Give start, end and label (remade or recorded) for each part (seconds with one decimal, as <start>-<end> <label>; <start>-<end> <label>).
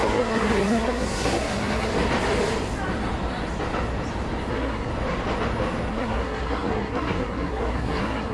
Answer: 0.0-1.9 remade; 1.9-4.5 recorded; 4.5-4.9 remade; 4.9-5.9 recorded; 5.9-8.3 remade